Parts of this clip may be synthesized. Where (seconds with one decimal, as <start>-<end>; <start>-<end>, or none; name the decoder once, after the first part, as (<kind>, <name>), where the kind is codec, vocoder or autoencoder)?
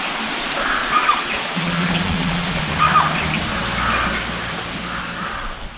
0.8-2.6 (vocoder, Vocos)